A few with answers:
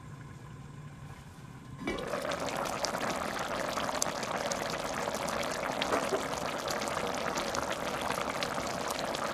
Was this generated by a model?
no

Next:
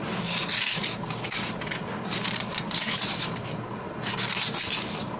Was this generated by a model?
no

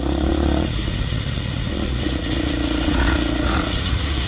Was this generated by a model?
yes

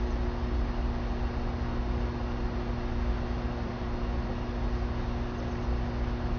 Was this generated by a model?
no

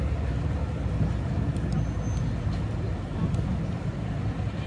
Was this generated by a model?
no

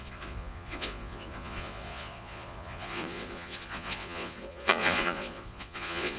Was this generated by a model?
yes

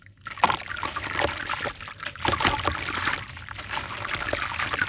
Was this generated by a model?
no